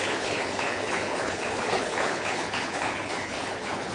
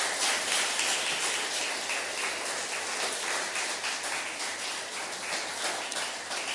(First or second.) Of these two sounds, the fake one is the first